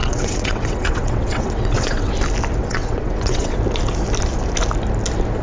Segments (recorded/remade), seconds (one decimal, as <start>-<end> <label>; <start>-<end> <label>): 0.0-2.1 remade; 2.1-2.6 recorded; 2.6-3.6 remade; 3.6-5.4 recorded